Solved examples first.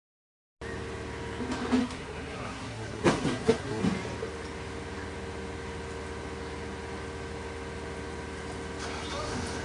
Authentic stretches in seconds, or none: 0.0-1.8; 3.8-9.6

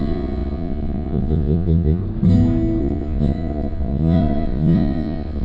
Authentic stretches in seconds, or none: 2.0-2.8

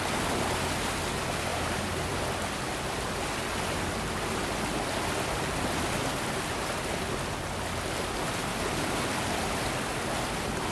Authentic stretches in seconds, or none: 0.0-1.5; 2.2-10.7